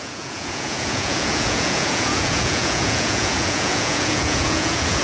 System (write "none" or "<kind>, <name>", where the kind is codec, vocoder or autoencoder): vocoder, Vocos